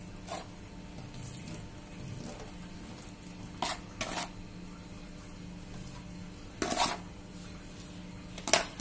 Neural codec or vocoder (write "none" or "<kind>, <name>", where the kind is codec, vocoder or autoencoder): none